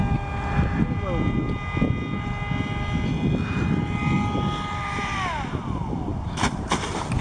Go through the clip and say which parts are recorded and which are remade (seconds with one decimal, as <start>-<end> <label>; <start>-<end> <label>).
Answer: 0.0-6.1 recorded; 6.1-7.2 remade